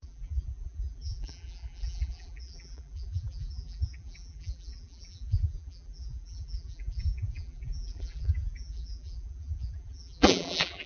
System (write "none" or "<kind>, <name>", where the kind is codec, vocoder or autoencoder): vocoder, BigVGAN v2